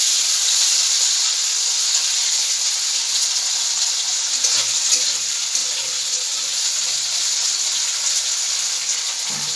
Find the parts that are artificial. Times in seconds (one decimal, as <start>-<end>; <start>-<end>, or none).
none